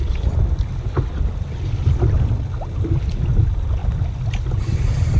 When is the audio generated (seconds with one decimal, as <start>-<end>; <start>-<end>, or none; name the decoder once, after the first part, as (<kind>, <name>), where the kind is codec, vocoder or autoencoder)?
none